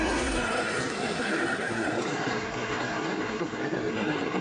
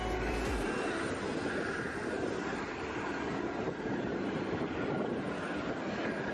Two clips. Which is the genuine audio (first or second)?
second